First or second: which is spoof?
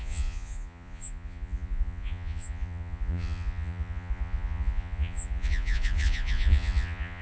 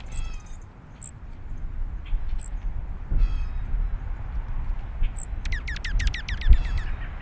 first